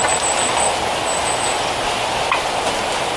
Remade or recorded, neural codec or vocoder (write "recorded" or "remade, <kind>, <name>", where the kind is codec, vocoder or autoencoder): recorded